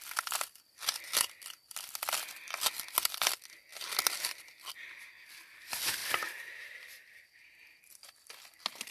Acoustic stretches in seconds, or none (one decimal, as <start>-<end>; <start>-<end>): 0.0-6.0; 8.1-8.9